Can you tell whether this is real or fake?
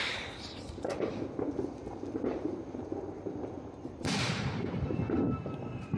real